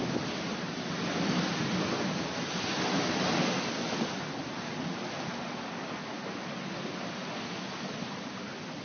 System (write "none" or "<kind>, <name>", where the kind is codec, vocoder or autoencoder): none